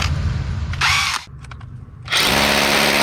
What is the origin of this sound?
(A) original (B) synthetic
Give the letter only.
A